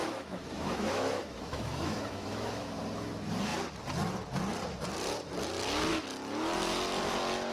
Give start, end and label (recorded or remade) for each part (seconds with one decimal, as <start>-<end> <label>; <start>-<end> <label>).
0.0-2.8 remade; 2.8-7.5 recorded

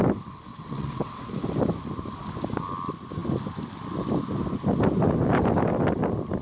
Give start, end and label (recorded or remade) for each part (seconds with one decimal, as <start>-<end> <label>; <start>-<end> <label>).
0.0-0.5 recorded; 0.5-1.3 remade; 1.3-6.4 recorded